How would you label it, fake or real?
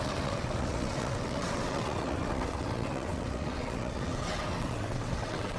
fake